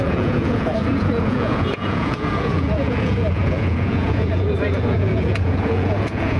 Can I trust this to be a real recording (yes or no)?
no